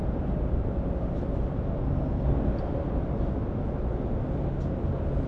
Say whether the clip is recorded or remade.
recorded